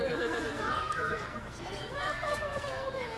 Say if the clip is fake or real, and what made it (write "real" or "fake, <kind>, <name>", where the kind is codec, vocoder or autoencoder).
fake, codec, SNAC